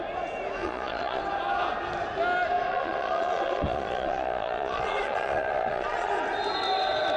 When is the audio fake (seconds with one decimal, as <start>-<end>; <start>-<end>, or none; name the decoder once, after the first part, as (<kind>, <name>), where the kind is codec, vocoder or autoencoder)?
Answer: 0.6-1.2 (vocoder, Vocos); 2.7-6.1